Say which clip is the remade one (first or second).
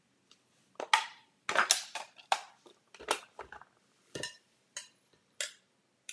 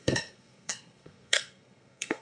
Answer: second